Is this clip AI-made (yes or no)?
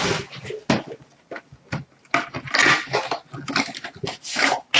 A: no